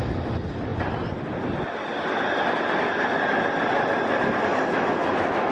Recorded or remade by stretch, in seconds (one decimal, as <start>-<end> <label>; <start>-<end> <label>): 0.0-4.5 recorded; 4.5-5.5 remade